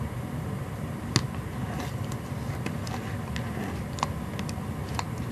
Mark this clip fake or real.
real